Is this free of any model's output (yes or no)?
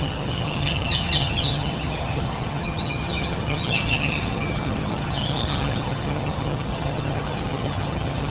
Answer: no